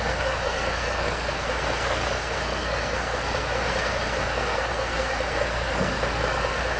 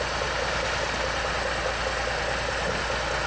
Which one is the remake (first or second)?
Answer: first